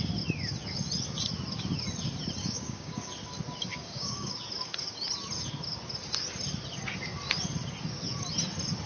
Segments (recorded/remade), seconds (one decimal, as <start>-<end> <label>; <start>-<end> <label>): 0.0-2.4 recorded; 2.4-3.1 remade; 3.1-3.7 recorded; 3.7-4.4 remade; 4.4-8.9 recorded